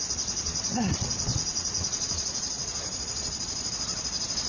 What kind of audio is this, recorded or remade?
remade